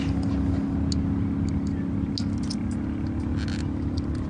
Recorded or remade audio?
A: recorded